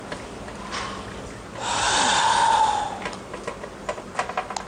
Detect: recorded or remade recorded